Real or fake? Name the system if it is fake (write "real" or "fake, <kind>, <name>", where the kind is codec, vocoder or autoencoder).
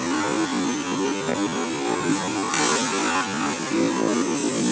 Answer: real